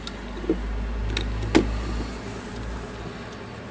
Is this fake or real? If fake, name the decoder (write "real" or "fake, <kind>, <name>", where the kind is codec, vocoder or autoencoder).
real